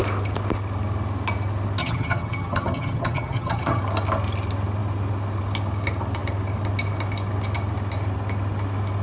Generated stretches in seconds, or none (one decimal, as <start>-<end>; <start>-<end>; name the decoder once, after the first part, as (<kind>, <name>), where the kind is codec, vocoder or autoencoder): 1.8-3.8 (vocoder, HiFi-GAN)